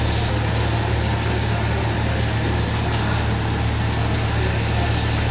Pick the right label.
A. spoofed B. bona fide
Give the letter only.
B